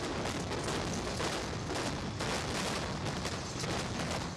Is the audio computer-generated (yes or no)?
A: no